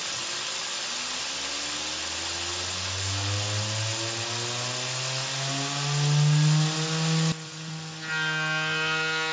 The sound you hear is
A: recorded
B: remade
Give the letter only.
A